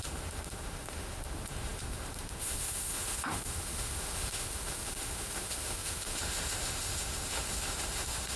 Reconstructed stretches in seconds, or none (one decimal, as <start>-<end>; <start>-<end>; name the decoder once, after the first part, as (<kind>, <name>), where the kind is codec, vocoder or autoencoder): 0.0-8.4 (autoencoder, DAC-VAE)

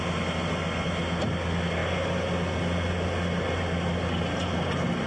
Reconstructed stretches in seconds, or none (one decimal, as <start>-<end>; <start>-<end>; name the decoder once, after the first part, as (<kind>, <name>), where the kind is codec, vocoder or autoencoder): none

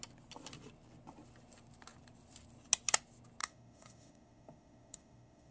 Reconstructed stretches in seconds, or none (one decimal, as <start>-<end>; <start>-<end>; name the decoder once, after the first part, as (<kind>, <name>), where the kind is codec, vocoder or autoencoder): 3.4-5.5 (autoencoder, DAC-VAE)

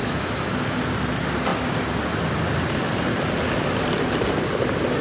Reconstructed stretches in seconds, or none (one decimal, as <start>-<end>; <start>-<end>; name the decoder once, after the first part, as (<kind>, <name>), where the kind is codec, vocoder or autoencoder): 0.0-0.8 (autoencoder, DAC-VAE)

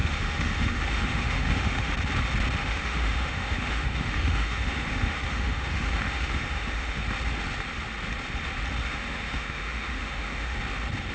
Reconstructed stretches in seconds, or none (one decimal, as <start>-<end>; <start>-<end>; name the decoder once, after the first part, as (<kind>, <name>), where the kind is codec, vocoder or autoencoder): 0.0-1.9 (autoencoder, DAC-VAE); 2.6-7.0; 8.8-10.6

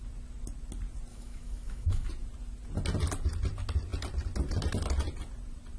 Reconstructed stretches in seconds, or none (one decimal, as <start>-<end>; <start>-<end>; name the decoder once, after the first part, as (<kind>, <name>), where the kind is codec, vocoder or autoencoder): 1.1-2.1 (autoencoder, DAC-VAE)

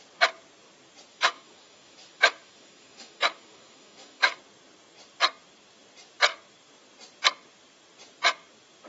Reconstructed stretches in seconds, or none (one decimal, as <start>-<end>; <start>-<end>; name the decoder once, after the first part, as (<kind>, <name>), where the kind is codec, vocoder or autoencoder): 1.1-4.4 (autoencoder, DAC-VAE)

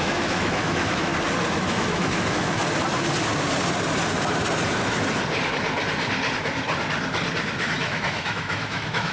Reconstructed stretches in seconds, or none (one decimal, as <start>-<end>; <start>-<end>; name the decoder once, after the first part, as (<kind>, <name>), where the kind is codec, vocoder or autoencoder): 0.0-1.1 (autoencoder, DAC-VAE); 1.7-2.6; 7.6-9.1